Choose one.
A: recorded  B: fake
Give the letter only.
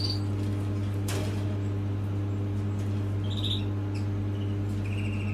A